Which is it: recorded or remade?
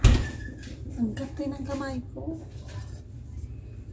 recorded